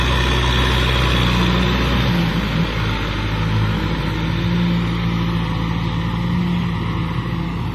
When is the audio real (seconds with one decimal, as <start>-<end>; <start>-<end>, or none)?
0.0-7.7